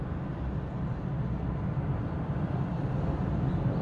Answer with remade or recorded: recorded